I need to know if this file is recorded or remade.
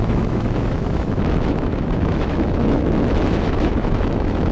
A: remade